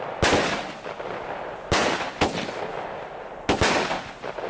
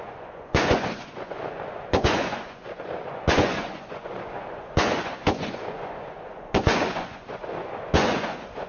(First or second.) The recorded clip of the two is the first